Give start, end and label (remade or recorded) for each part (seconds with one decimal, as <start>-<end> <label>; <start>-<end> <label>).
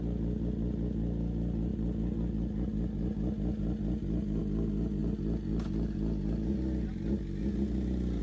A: 0.0-8.2 recorded